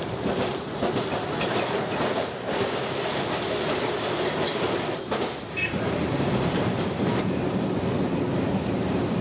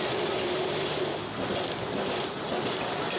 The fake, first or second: first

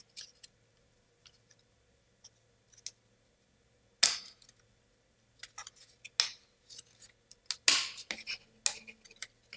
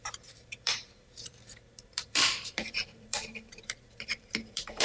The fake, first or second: second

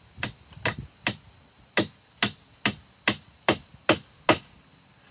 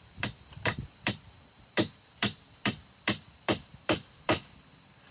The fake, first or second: second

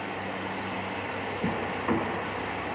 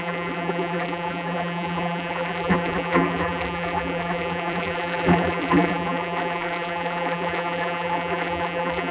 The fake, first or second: second